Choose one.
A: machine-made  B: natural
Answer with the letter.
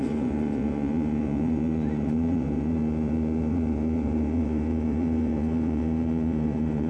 A